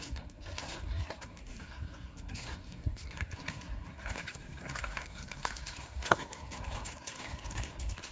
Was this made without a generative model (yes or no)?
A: no